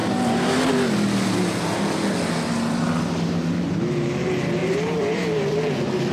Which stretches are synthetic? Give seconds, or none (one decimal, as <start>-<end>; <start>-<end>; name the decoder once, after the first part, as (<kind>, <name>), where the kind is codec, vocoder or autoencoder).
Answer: 0.0-0.7 (vocoder, BigVGAN v2); 4.6-6.1